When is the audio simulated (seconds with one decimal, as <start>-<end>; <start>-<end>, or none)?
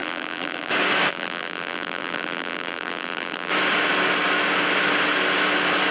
0.0-0.7; 1.1-3.5